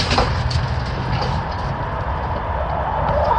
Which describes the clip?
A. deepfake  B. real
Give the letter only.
B